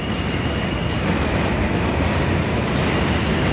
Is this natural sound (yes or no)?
yes